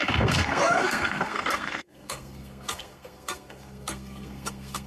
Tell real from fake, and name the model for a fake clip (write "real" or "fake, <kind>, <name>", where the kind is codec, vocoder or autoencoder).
fake, codec, SNAC